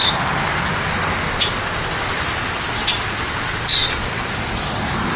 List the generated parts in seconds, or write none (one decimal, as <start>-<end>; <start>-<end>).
none